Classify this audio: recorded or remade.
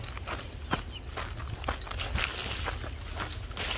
recorded